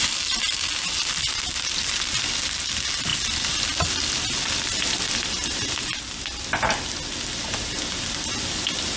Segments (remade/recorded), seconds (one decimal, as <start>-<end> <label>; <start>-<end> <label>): 0.0-9.0 recorded